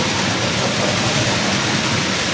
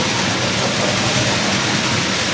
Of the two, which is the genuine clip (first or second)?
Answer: second